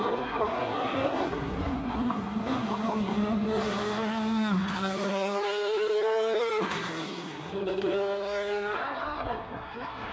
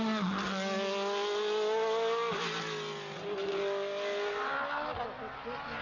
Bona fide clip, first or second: second